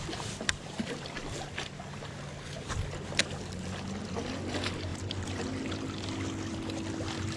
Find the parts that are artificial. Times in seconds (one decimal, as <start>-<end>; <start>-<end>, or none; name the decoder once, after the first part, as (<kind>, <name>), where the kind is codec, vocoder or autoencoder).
none

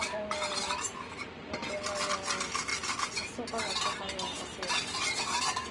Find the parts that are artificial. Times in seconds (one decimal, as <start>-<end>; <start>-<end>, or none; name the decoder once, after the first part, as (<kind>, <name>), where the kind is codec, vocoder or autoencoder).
0.0-1.1 (vocoder, BigVGAN v2)

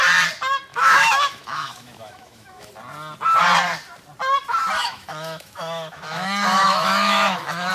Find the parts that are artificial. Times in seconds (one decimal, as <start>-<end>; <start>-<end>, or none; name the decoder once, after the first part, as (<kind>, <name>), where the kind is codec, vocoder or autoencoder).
0.7-2.7 (autoencoder, DAC-VAE); 4.8-7.7

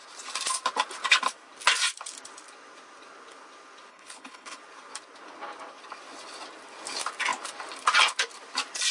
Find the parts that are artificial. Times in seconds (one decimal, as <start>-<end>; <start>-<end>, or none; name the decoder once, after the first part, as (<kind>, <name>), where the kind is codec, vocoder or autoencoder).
3.9-4.6 (codec, HILCodec)